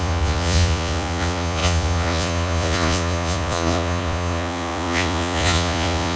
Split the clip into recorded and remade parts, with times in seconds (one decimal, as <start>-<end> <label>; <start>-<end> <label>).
0.0-6.2 remade